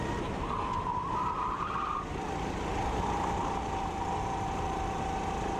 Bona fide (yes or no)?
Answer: yes